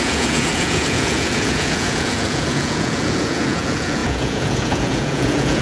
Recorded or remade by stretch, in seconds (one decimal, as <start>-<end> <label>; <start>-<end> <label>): 0.0-5.6 remade